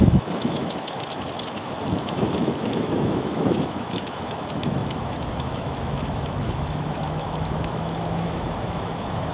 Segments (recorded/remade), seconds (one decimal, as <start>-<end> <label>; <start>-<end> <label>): 0.0-9.3 remade